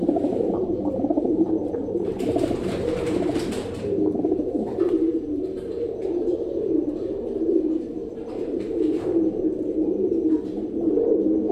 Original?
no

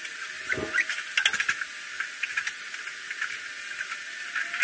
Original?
yes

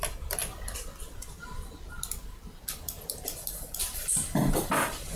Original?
yes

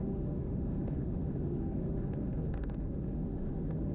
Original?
no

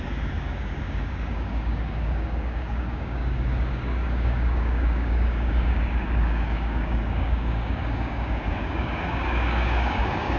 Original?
no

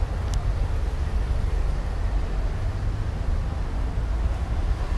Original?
yes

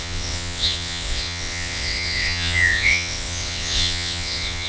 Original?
no